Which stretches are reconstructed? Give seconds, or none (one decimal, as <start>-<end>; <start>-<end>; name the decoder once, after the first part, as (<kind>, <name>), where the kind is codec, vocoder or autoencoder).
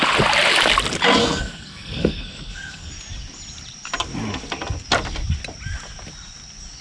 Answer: 1.2-2.9 (codec, SNAC)